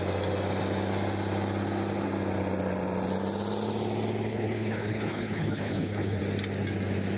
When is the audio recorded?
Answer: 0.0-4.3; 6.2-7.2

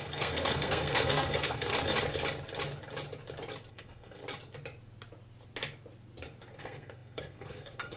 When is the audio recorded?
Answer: 1.7-3.7; 4.2-6.6

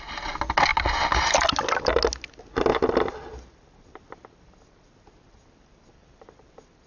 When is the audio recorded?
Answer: 0.0-6.9

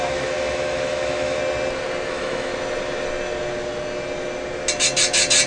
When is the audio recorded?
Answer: 1.4-2.1; 2.5-5.5

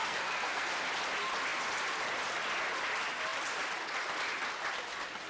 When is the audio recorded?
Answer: 0.7-5.3

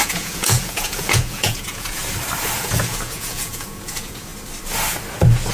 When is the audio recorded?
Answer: 2.0-2.6; 4.3-5.5

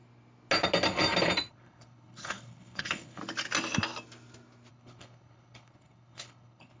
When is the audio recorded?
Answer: 0.0-1.5; 3.2-4.7

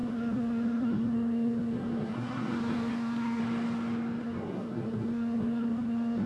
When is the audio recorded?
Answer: 3.4-4.2